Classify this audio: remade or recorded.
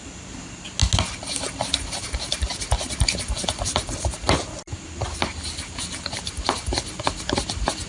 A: recorded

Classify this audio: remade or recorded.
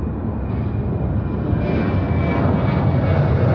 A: recorded